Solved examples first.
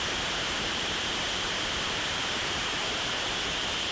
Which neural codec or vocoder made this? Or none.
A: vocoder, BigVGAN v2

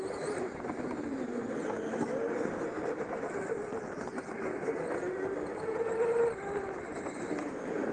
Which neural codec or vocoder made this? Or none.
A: none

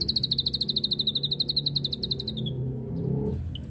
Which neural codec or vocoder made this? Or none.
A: none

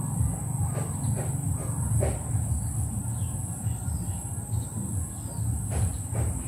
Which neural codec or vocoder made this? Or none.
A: none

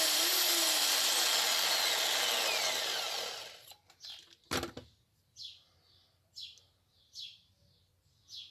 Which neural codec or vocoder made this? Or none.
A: none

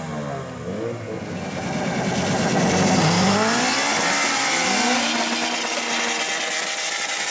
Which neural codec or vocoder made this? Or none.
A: none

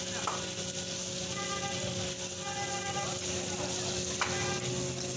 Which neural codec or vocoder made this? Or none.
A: none